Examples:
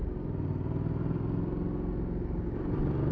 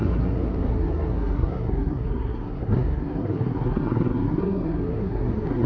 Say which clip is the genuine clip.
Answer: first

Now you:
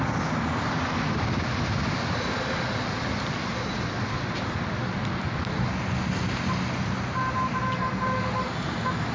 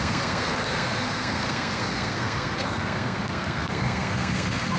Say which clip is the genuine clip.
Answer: first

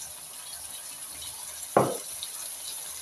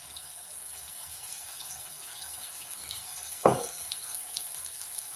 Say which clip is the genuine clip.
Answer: first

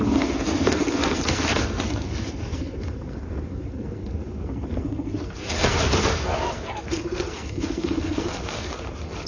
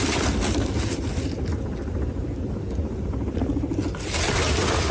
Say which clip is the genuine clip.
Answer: second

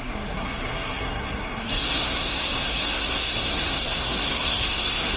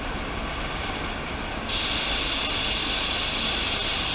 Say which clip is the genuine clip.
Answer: second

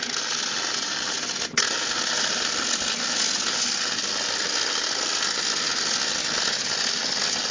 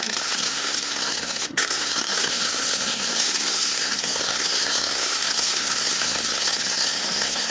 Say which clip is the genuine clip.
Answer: first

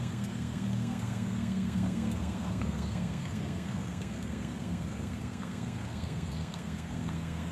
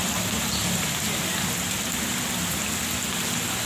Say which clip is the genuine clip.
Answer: second